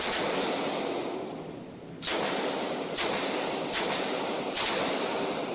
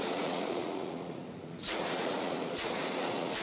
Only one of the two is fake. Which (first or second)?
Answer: second